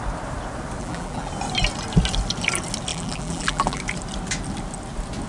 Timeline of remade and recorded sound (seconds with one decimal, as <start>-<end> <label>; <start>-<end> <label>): 0.0-0.8 recorded; 0.8-1.3 remade; 1.3-2.9 recorded; 2.9-3.8 remade; 3.8-5.3 recorded